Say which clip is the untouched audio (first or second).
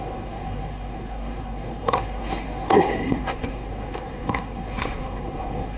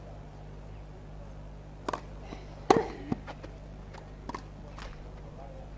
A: second